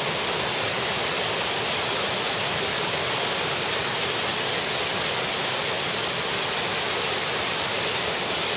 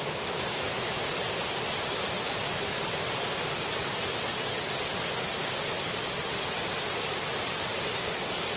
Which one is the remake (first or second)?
second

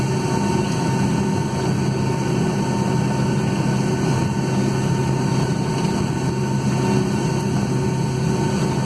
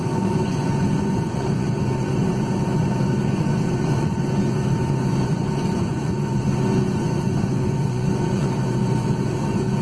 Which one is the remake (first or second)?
second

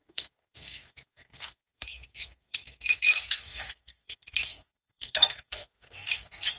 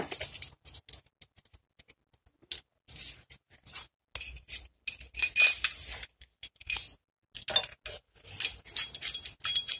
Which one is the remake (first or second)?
first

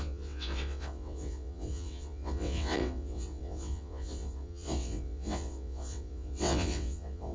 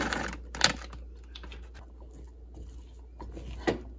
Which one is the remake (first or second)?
first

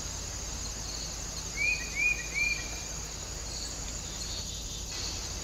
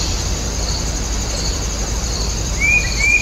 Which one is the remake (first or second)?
second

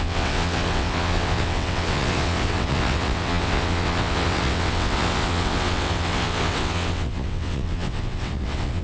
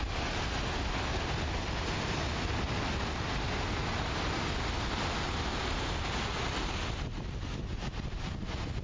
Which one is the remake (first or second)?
first